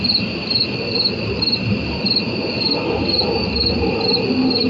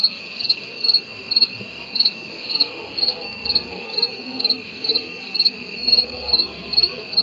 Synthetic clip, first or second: second